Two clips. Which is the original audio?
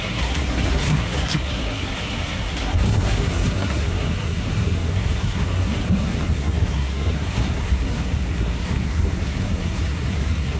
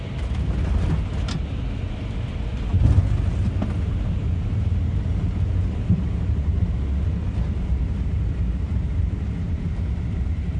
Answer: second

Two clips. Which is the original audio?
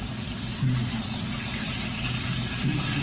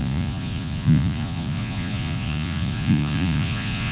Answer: first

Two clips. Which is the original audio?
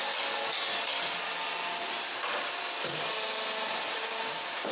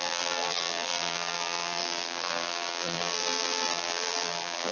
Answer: first